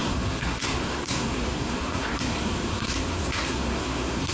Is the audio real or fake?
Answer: fake